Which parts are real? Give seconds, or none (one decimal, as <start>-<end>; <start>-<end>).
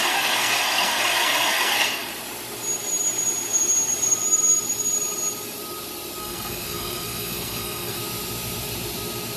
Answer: 2.1-6.2; 8.0-9.4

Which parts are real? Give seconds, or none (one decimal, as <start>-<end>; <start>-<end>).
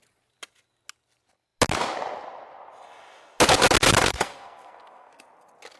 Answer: 0.0-4.1; 5.2-5.8